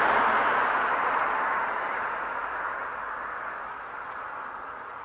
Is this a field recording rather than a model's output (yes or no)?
no